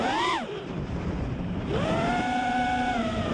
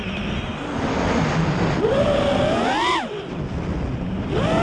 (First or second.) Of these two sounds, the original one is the second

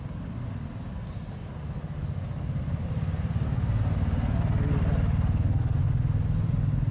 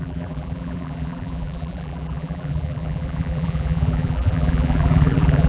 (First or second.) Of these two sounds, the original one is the first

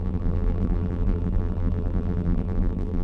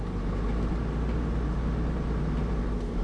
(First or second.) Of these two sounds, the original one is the second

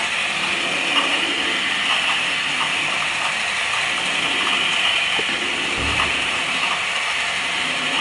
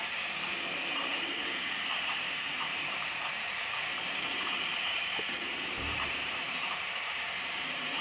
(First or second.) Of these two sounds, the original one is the first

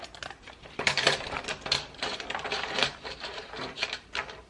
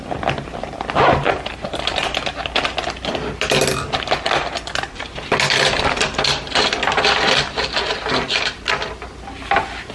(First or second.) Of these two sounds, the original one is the second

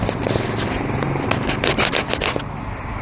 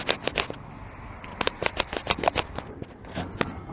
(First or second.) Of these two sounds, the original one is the first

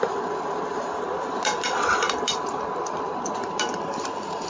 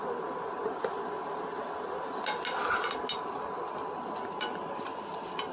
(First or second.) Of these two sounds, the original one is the second